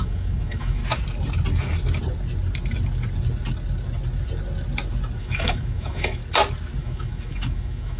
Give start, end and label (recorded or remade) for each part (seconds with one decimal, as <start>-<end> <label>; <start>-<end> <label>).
0.0-0.8 remade; 0.8-5.2 recorded; 5.2-6.2 remade; 6.2-6.8 recorded; 6.8-8.0 remade